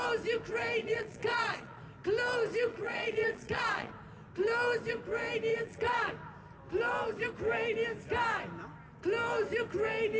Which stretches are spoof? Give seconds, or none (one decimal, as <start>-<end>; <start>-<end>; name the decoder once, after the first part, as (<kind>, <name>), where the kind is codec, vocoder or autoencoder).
0.8-1.8 (vocoder, Vocos); 2.7-3.9; 5.5-6.1